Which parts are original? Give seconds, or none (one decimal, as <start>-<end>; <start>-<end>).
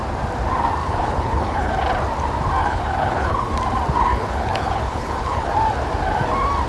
0.0-0.8; 1.7-2.6; 3.5-4.0; 5.5-6.7